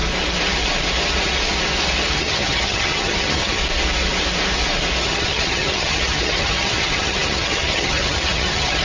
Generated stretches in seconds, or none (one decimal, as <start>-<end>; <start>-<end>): 2.1-3.6; 5.0-8.8